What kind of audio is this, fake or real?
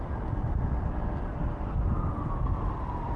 real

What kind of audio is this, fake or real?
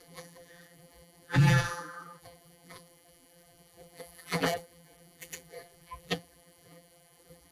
fake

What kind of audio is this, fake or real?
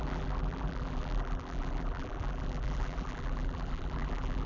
fake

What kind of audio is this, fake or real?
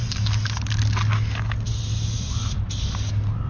real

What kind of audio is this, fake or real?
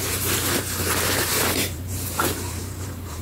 fake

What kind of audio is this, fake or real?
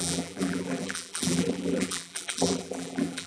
fake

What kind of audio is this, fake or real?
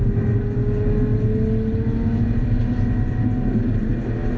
real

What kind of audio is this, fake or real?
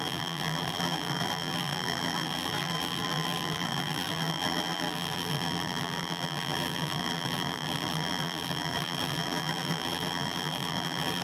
fake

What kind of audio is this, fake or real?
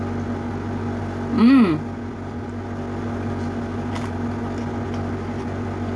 real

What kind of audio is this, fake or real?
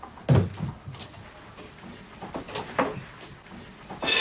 real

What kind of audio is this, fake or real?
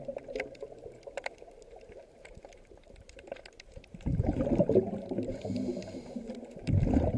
fake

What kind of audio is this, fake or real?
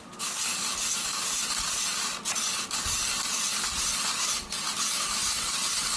real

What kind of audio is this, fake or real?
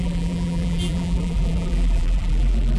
fake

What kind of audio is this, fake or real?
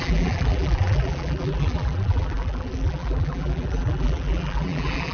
fake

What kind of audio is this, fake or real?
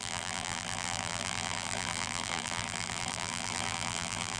fake